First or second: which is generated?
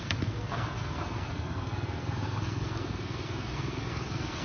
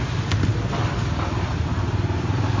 first